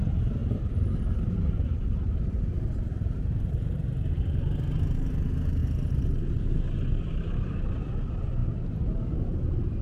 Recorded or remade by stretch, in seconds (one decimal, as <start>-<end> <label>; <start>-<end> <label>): 0.0-0.4 recorded; 0.4-4.1 remade; 4.1-9.8 recorded